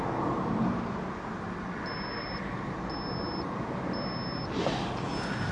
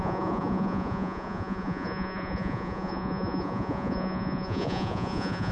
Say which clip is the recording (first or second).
first